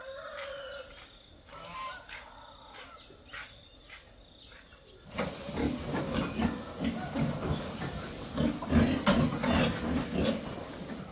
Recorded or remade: recorded